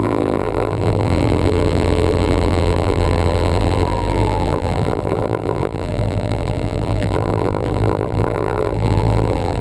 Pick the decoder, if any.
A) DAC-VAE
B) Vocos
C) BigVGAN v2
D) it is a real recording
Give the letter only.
C